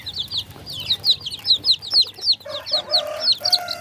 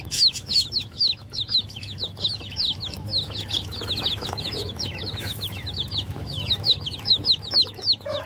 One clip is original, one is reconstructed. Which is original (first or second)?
first